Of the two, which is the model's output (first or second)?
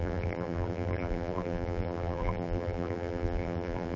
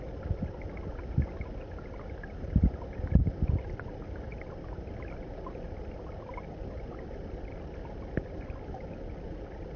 first